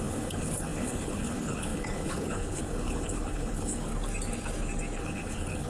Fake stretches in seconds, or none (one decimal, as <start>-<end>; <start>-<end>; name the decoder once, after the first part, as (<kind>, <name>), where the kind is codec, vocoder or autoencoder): 0.0-3.9 (codec, HILCodec); 5.0-5.7

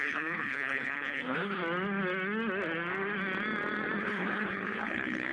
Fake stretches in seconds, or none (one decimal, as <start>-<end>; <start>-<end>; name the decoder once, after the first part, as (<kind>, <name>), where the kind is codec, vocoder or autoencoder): 0.0-1.6 (codec, HILCodec); 4.0-5.3

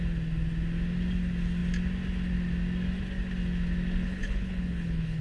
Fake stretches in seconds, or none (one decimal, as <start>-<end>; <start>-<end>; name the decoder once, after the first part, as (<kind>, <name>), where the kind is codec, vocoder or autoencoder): 4.0-5.2 (codec, HILCodec)

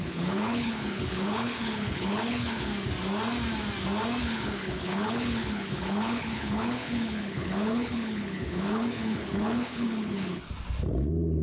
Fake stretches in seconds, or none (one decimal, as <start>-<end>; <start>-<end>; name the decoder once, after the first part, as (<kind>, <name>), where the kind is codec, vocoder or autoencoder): 0.0-2.7 (codec, HILCodec); 4.2-10.4; 10.9-11.4

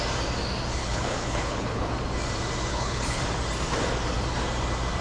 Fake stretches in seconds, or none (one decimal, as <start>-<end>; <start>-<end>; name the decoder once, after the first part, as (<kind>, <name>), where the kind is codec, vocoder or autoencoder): 0.8-1.9 (codec, HILCodec); 2.7-3.2

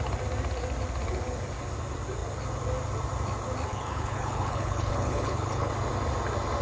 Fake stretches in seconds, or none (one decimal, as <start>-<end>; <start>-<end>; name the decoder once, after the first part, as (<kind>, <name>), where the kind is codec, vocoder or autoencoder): 3.7-5.7 (codec, HILCodec)

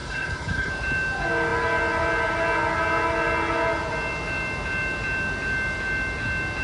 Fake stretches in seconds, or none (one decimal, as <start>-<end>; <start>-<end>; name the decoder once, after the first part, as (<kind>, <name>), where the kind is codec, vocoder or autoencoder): 0.0-0.7 (codec, HILCodec)